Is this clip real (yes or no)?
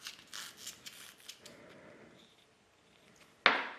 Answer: yes